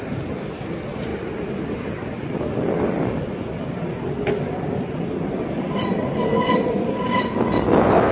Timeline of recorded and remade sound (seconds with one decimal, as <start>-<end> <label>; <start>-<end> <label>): 0.0-8.1 recorded